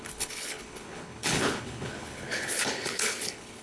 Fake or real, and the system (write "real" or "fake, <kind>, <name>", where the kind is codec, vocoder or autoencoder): fake, codec, HILCodec